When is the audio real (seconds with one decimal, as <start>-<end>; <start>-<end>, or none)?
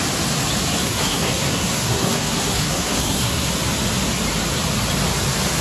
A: 0.0-0.8; 3.5-5.6